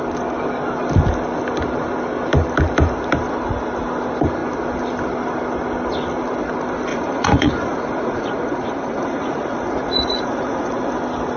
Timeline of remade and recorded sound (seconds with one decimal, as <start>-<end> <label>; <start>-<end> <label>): 0.0-6.9 recorded; 6.9-10.9 remade; 10.9-11.4 recorded